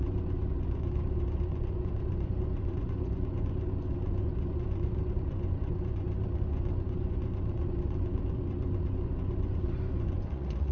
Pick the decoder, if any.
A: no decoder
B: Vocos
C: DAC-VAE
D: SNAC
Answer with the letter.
B